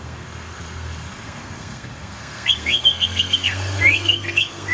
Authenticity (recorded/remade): remade